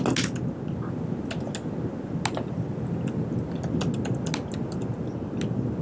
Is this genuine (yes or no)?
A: yes